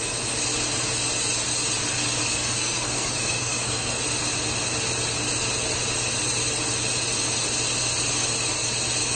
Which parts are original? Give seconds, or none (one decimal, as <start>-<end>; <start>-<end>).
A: 0.0-2.2; 4.0-9.2